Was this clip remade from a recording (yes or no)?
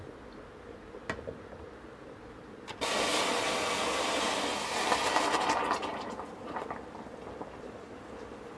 no